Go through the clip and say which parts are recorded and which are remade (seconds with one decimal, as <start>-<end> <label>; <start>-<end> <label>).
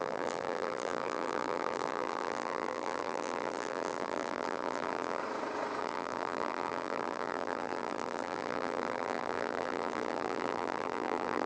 0.0-5.2 remade; 5.2-5.8 recorded; 5.8-11.5 remade